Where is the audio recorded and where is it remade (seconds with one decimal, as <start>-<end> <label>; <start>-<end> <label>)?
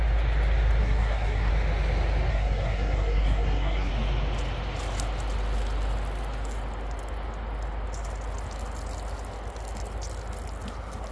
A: 0.0-0.8 recorded; 0.8-1.5 remade; 1.5-2.3 recorded; 2.3-3.9 remade; 3.9-11.1 recorded